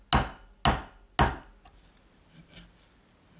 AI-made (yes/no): no